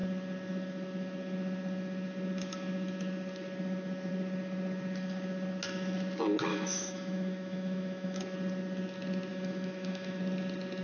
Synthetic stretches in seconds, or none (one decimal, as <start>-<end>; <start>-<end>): 6.5-8.2; 9.3-10.2